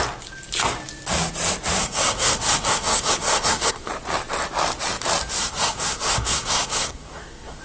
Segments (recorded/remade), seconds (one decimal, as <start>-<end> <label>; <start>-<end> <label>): 0.0-1.8 recorded; 1.8-3.9 remade; 3.9-5.4 recorded; 5.4-7.6 remade